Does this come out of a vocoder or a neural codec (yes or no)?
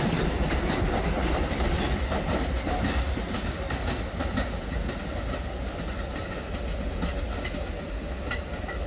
no